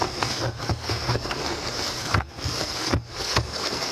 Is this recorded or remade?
remade